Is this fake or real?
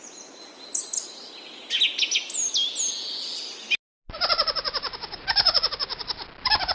real